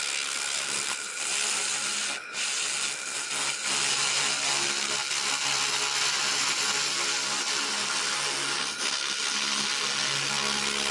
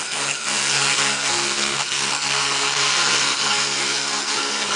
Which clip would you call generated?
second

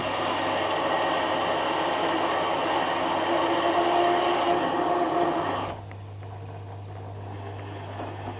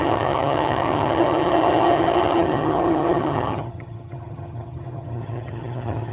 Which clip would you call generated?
second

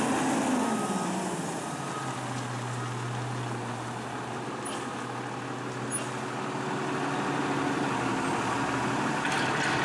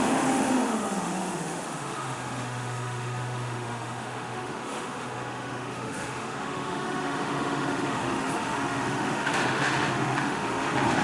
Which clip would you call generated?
second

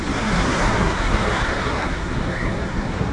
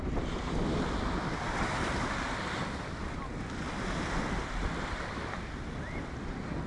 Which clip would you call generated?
first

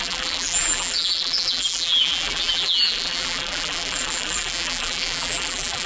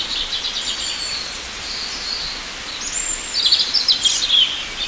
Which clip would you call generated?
first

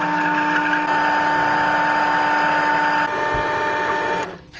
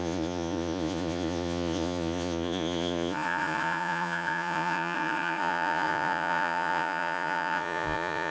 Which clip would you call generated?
second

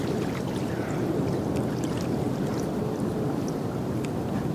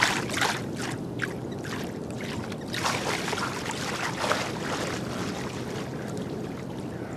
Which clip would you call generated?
first